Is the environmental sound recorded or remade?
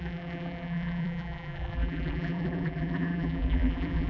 remade